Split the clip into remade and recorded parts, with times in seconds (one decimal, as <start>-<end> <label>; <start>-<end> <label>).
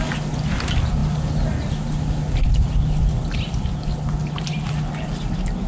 0.0-5.7 recorded